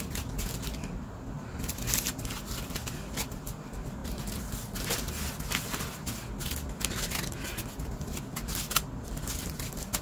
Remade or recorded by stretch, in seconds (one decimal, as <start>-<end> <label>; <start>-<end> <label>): 0.0-10.0 recorded